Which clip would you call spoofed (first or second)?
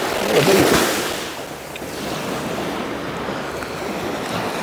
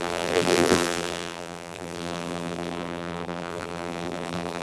second